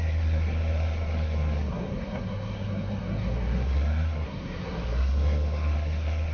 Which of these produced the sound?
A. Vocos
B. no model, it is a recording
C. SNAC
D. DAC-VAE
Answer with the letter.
C